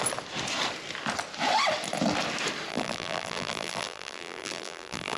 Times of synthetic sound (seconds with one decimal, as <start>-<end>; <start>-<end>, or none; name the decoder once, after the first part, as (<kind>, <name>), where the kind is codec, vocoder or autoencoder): 2.7-5.2 (vocoder, BigVGAN v2)